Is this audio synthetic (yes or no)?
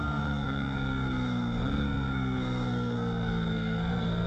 yes